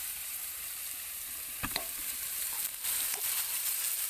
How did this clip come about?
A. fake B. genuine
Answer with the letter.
A